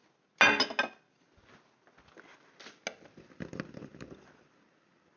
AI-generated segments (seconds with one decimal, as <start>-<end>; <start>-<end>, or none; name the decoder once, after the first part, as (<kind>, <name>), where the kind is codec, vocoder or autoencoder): none